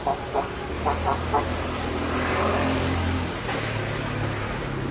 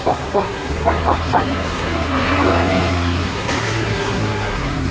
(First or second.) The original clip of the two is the first